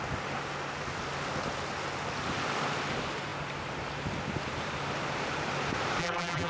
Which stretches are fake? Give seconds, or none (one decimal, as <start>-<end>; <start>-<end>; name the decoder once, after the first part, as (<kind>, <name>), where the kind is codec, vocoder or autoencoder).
6.0-6.5 (vocoder, BigVGAN v2)

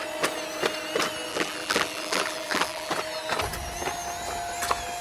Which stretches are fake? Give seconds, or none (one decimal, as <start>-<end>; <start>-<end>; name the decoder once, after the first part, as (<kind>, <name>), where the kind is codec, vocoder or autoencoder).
1.3-2.9 (vocoder, BigVGAN v2)

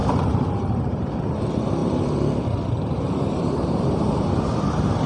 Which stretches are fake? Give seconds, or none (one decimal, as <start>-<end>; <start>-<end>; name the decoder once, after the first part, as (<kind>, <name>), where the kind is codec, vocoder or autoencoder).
0.0-1.4 (vocoder, BigVGAN v2); 1.8-5.1

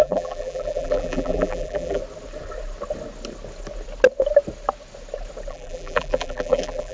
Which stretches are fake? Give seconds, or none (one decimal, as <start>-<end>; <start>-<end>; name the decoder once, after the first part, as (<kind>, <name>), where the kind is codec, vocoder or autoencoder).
0.0-2.0 (vocoder, BigVGAN v2); 5.5-6.9